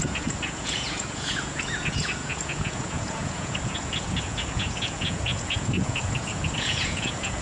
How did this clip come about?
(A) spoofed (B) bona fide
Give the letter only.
A